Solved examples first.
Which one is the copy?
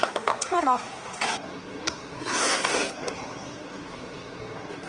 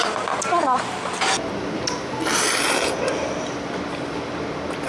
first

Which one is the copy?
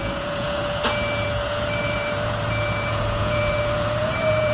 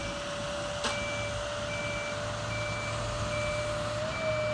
first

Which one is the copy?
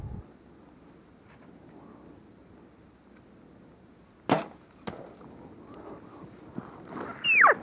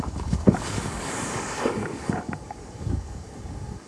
second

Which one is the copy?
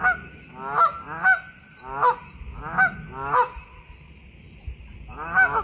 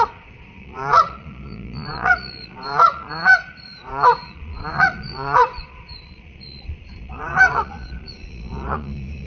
second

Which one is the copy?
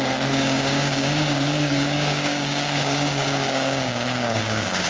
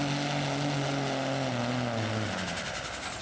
first